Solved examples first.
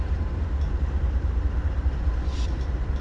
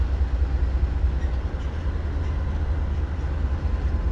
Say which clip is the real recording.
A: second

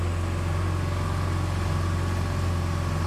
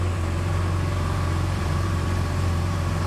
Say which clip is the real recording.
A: first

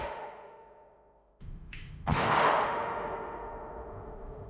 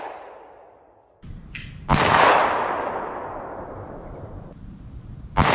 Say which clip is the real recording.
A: second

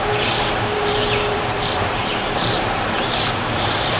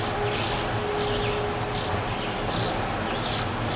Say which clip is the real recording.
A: second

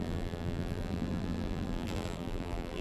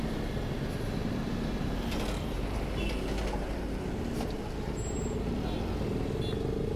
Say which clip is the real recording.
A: second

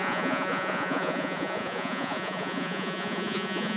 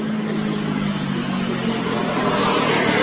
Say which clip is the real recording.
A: second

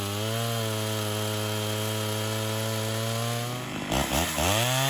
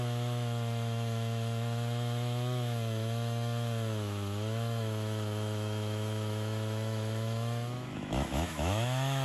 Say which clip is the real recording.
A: first